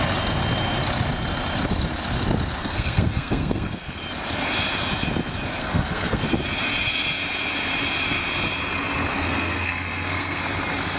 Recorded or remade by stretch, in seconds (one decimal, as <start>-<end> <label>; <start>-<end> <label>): 0.0-2.6 recorded; 2.6-4.0 remade; 4.0-5.6 recorded; 5.6-6.2 remade; 6.2-9.1 recorded; 9.1-10.4 remade; 10.4-11.0 recorded

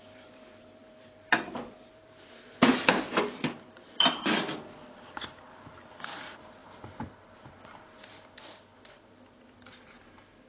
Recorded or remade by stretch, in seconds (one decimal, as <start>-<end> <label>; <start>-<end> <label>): 0.0-6.6 remade; 6.6-8.0 recorded; 8.0-10.5 remade

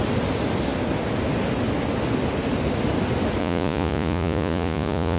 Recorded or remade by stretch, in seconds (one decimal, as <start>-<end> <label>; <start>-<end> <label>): 0.0-3.4 recorded; 3.4-5.2 remade